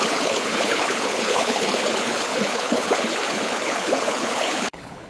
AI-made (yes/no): yes